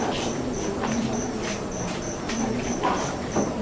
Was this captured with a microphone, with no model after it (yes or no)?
no